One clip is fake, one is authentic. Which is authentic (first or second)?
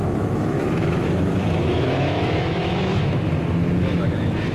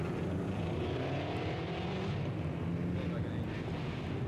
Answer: second